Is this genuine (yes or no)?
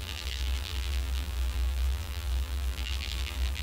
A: no